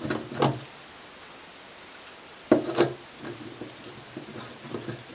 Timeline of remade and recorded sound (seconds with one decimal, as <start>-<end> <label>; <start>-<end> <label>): 0.0-5.1 recorded